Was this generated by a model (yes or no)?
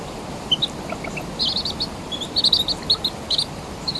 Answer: no